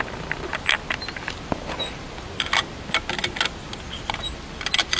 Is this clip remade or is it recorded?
recorded